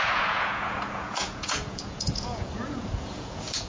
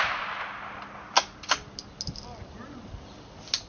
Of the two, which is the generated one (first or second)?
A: first